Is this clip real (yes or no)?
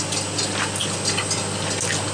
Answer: yes